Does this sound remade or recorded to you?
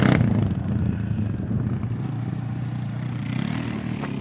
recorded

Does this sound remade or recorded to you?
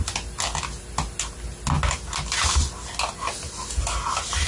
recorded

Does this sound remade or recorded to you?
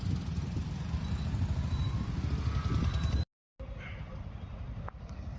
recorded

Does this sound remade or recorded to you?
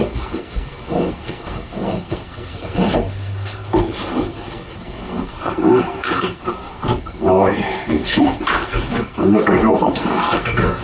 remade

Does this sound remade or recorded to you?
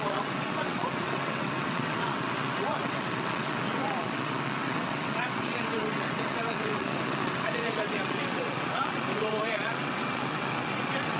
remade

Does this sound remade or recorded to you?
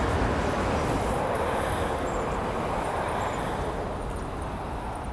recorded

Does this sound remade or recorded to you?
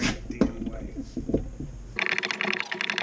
recorded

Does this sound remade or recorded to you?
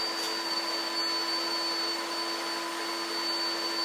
recorded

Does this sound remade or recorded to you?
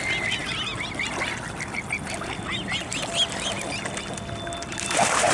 recorded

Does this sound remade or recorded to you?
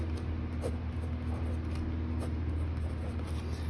recorded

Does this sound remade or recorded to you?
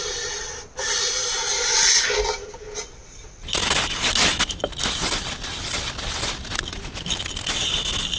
recorded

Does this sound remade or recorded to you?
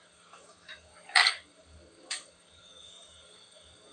remade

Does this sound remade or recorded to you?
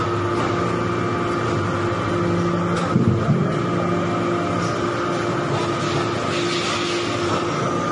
recorded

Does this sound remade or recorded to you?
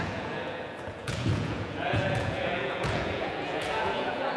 remade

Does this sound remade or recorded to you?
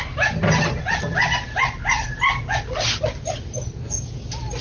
recorded